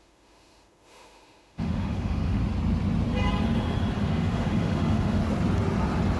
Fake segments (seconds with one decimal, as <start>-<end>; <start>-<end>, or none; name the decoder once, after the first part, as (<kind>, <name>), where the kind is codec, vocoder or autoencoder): 0.0-2.4 (autoencoder, DAC-VAE); 4.0-5.2